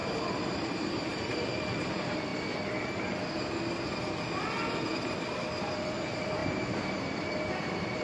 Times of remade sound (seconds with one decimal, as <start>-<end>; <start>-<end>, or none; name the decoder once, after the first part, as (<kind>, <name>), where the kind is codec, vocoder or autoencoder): 0.0-2.3 (vocoder, BigVGAN v2); 5.6-8.0